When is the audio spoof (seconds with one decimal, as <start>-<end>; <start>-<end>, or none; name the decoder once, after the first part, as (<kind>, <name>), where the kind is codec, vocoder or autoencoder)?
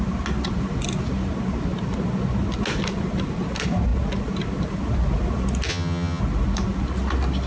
5.7-6.2 (vocoder, HiFi-GAN)